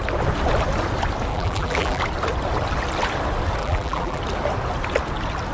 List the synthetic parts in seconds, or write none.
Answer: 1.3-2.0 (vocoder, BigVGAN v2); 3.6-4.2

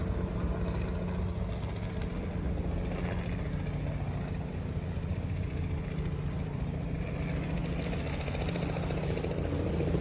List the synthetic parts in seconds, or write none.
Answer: 5.1-7.6 (vocoder, BigVGAN v2); 9.0-10.0

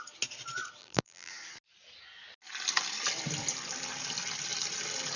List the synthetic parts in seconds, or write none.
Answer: 0.8-1.3 (vocoder, BigVGAN v2)